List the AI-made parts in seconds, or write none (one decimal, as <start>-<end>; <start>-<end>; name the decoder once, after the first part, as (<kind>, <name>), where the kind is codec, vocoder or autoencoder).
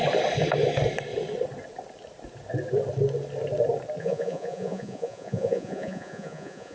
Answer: 4.0-6.7 (vocoder, Vocos)